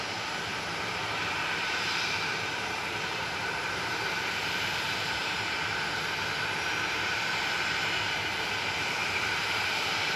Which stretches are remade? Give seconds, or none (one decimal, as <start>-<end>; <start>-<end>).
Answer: 0.5-5.5; 9.0-10.2